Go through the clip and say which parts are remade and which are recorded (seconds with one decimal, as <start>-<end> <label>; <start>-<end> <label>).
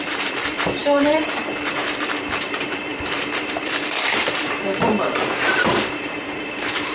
0.0-1.8 remade; 1.8-2.4 recorded; 2.4-6.9 remade